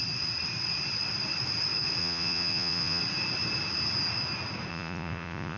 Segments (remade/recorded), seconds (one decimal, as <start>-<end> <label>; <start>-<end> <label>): 0.0-2.0 recorded; 2.0-3.0 remade; 3.0-4.7 recorded; 4.7-5.6 remade